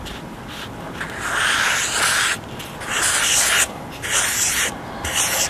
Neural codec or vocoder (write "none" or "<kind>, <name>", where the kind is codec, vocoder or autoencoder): none